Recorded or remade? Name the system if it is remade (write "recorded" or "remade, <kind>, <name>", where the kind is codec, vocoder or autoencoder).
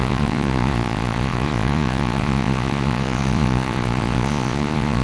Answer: remade, vocoder, Vocos